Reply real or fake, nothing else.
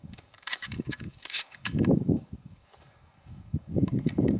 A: fake